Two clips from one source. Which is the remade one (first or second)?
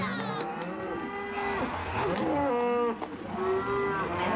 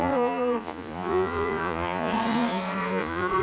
second